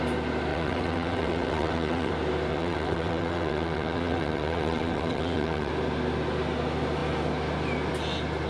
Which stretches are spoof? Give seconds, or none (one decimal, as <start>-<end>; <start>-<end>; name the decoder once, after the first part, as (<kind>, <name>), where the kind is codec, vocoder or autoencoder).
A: 0.5-2.1 (vocoder, WaveNeXt); 2.5-5.7